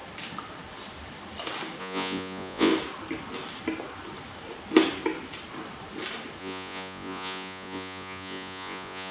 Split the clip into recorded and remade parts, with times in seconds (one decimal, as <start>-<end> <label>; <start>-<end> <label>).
0.0-1.8 recorded; 1.8-2.7 remade; 2.7-6.4 recorded; 6.4-9.1 remade